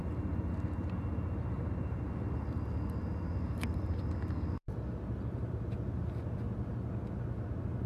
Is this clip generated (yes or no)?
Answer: no